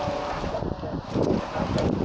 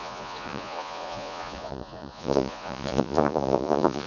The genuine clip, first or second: first